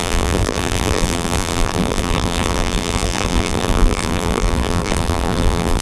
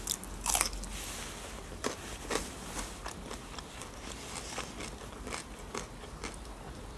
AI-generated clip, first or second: first